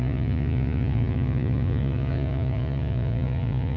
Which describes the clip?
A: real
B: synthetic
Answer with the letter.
B